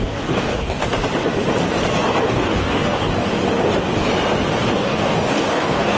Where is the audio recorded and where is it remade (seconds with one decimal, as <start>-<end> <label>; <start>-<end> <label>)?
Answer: 0.0-0.8 remade; 0.8-2.3 recorded; 2.3-3.4 remade; 3.4-4.7 recorded; 4.7-6.0 remade